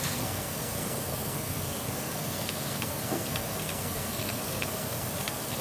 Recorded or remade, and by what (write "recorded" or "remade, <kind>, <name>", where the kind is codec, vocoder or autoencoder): remade, codec, SNAC